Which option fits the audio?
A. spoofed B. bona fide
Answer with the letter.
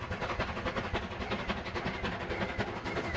B